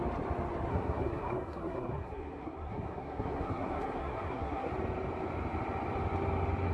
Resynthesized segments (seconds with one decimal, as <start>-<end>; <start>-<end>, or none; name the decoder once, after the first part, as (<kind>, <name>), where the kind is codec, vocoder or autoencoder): 0.7-4.7 (codec, SNAC)